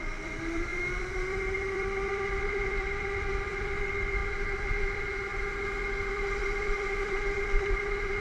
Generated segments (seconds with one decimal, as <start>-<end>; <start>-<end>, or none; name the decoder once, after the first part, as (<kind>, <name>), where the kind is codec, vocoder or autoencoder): 0.0-5.3 (vocoder, BigVGAN v2); 6.1-8.2